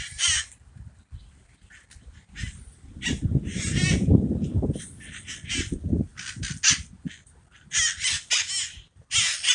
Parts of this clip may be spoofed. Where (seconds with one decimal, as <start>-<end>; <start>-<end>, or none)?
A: 0.0-6.1; 8.9-9.5